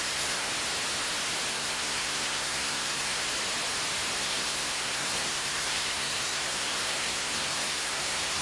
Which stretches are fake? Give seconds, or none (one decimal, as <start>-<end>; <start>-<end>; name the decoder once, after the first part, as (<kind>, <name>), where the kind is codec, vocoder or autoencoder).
0.0-0.5 (codec, SNAC); 1.5-3.3; 4.2-8.4